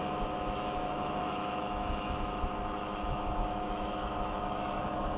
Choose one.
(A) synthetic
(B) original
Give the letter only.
A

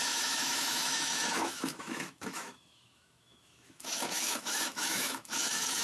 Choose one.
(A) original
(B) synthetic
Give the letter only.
B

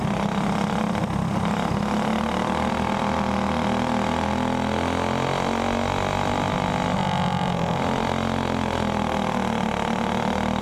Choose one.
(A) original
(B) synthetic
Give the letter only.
A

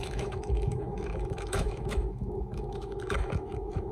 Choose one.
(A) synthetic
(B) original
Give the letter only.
A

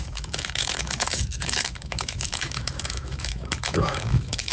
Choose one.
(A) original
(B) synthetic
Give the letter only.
B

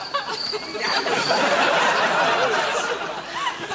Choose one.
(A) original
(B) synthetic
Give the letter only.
A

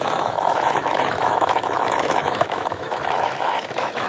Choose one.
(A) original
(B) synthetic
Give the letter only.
B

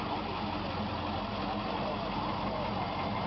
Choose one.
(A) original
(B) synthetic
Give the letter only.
A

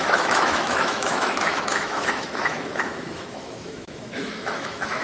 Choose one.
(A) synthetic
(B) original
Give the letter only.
A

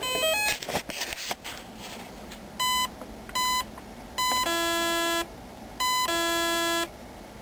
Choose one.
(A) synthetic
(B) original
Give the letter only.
B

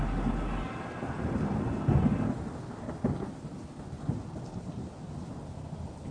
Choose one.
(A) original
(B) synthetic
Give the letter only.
A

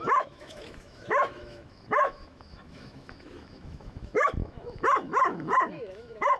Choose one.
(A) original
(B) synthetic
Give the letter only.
B